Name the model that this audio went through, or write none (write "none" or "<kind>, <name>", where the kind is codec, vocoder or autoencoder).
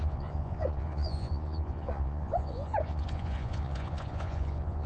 vocoder, Vocos